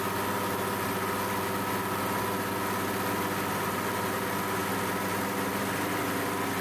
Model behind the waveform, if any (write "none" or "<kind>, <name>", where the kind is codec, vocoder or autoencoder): none